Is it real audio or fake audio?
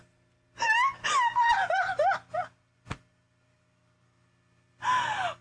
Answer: real